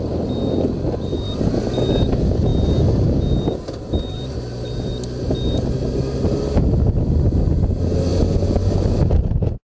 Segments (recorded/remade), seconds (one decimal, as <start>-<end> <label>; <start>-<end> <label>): 0.0-9.6 recorded